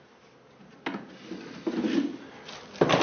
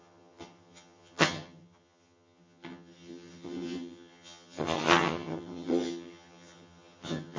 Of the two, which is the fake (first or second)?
second